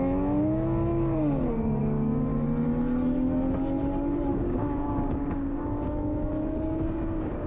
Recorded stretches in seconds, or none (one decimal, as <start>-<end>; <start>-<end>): 2.3-4.3